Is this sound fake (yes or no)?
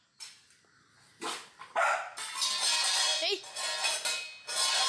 no